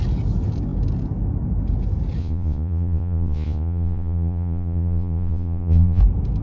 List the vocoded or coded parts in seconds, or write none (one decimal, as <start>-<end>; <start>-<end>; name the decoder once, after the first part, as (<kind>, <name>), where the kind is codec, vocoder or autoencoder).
2.2-6.0 (vocoder, Vocos)